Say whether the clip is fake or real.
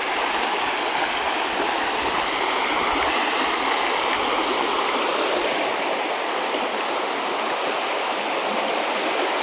real